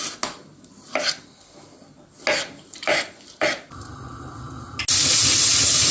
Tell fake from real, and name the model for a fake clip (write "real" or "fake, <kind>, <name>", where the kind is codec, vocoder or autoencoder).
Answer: real